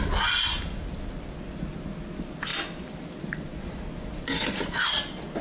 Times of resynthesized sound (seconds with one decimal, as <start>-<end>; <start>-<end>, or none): none